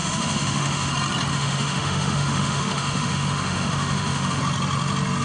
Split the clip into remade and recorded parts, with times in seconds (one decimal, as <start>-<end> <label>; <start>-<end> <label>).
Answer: 0.0-0.9 remade; 0.9-1.3 recorded; 1.3-4.4 remade; 4.4-5.2 recorded